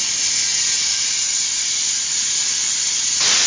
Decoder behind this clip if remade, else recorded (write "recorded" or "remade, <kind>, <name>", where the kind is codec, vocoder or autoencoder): recorded